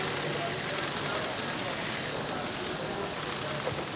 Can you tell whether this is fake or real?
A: real